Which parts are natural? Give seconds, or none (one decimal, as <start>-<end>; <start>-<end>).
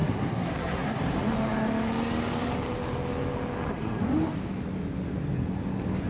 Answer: 1.0-6.1